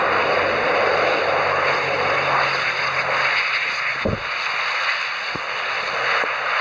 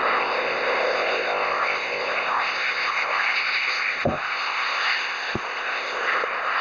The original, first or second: first